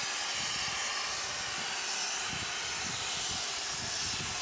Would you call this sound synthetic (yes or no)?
no